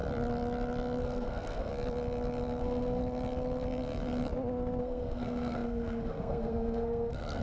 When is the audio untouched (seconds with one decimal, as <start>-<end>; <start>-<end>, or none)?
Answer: 0.0-1.0; 1.7-2.6; 3.0-4.8